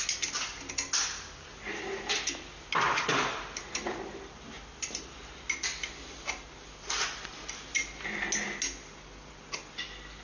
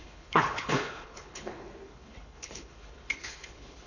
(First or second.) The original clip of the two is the first